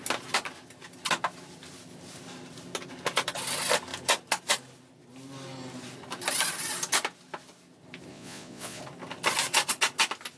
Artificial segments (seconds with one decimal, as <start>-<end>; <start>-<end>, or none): 8.1-8.8